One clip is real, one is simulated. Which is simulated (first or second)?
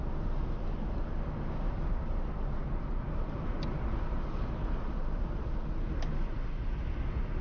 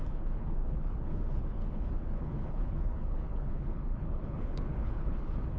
second